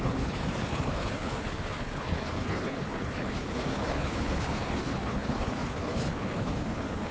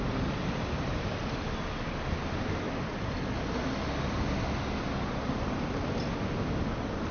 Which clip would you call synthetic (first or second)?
first